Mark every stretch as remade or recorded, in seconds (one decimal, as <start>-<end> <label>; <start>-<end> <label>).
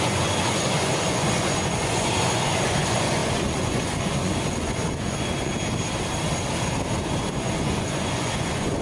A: 0.0-5.5 remade; 5.5-7.0 recorded; 7.0-8.8 remade